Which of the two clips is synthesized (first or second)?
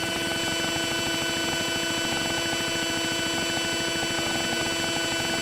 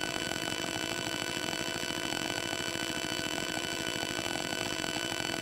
second